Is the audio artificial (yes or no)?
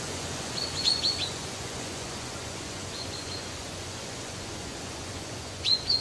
yes